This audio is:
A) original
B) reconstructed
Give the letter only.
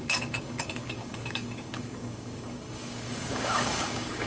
B